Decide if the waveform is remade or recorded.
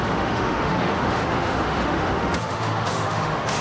remade